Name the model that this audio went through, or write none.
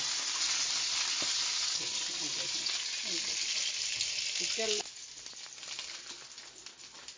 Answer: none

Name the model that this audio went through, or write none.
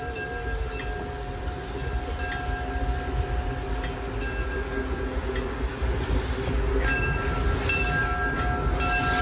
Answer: none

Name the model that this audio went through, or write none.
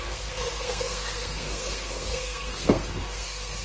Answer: codec, SNAC